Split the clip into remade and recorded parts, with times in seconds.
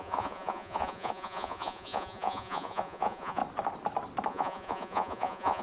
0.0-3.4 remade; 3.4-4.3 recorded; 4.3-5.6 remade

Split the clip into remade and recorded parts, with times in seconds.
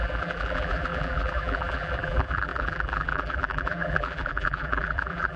0.0-5.4 remade